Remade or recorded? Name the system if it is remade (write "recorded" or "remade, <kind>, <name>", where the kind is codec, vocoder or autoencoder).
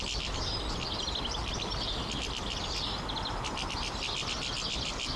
recorded